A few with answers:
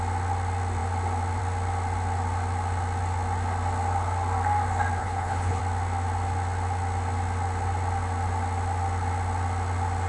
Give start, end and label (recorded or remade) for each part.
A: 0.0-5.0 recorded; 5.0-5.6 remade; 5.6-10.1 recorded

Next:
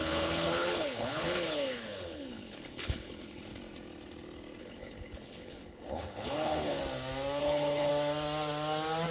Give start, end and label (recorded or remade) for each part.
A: 0.0-3.5 remade; 3.5-4.6 recorded; 4.6-6.8 remade; 6.8-7.4 recorded; 7.4-7.9 remade; 7.9-9.1 recorded

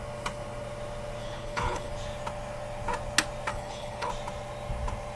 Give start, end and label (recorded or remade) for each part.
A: 0.0-1.2 recorded; 1.2-1.9 remade; 1.9-3.5 recorded; 3.5-4.1 remade; 4.1-5.2 recorded

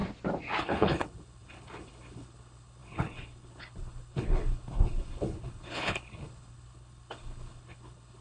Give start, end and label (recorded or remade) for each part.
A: 0.0-0.6 recorded; 0.6-8.2 remade